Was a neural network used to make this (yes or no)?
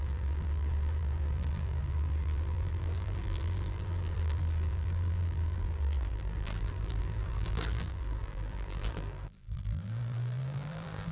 yes